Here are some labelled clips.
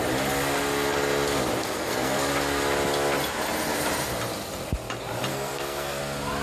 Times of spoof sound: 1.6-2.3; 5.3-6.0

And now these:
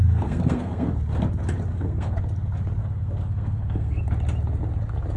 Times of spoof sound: 0.0-0.9; 1.7-2.2; 2.8-4.0

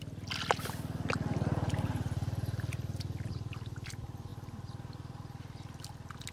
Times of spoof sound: none

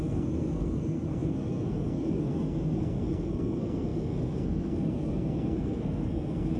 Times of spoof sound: 0.0-6.6

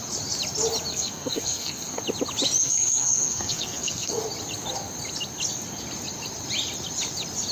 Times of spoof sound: 0.9-2.0; 2.6-4.2

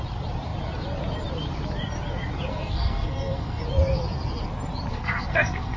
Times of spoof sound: 2.5-3.6; 4.9-5.8

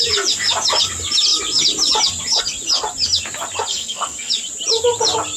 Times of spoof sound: 3.7-4.3